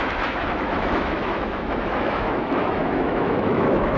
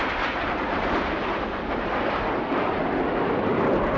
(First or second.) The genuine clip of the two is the second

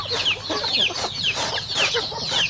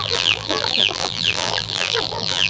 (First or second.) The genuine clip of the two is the first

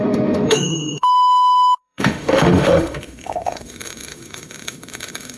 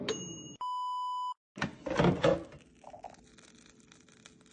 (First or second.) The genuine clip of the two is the second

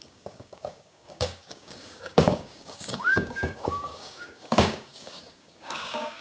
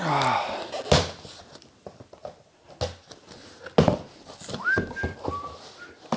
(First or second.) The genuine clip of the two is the second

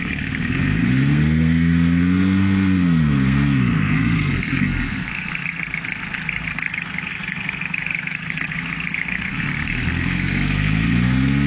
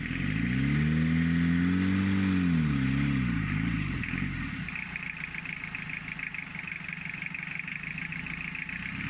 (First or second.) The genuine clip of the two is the second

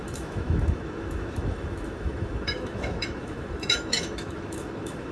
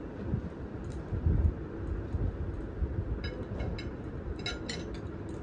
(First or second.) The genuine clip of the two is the second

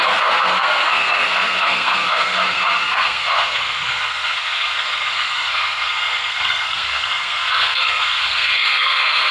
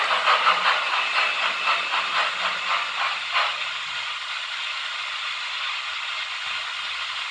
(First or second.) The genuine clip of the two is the second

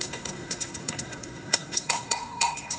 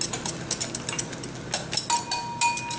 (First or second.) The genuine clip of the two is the second